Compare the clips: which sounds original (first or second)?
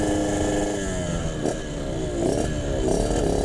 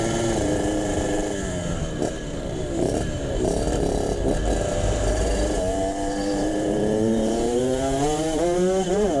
first